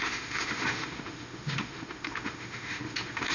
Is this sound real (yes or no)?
no